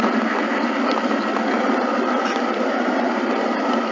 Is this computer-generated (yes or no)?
no